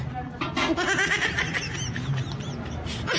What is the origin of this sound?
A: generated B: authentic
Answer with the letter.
B